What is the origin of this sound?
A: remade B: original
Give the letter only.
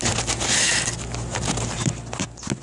B